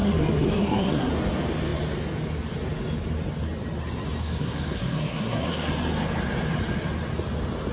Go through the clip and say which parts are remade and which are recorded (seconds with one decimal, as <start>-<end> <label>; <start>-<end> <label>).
0.0-1.1 remade; 1.1-4.2 recorded; 4.2-5.7 remade; 5.7-7.7 recorded

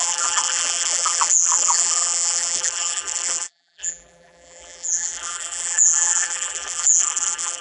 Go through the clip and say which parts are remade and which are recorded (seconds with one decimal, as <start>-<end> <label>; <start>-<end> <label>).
0.0-7.6 remade